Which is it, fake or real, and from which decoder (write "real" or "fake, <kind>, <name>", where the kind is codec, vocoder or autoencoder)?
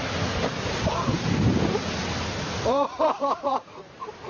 real